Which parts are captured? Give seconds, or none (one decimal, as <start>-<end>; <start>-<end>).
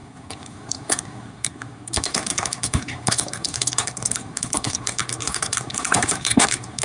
none